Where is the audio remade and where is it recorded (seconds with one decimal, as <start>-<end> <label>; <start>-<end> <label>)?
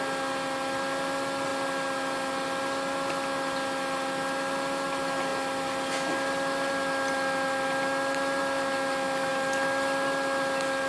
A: 0.0-10.9 recorded